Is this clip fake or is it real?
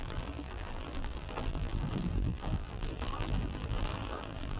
fake